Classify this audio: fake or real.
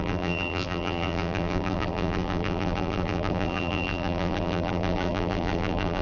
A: fake